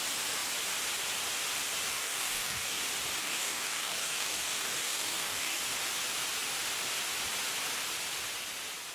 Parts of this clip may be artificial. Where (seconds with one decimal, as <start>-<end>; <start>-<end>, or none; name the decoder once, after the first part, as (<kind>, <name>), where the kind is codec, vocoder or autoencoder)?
1.9-2.8 (codec, DAC); 3.2-5.6